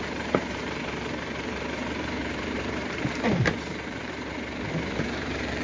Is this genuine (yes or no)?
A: no